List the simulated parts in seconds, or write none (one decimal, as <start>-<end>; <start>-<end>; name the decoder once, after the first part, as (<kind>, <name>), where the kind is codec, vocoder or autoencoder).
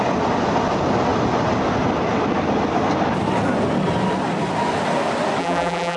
5.4-6.0 (vocoder, BigVGAN v2)